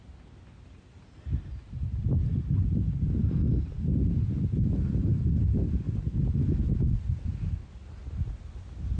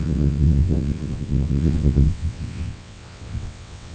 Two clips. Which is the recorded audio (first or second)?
first